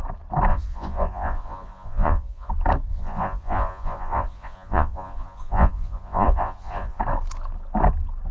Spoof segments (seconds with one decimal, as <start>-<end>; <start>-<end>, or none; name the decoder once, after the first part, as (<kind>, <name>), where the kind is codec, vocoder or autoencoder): 0.5-2.5 (vocoder, Vocos); 2.9-7.0